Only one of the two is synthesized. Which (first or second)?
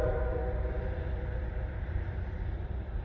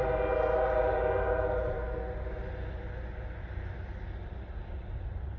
first